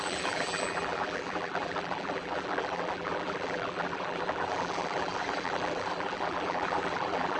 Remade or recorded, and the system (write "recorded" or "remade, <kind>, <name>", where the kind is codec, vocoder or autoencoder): remade, vocoder, BigVGAN v2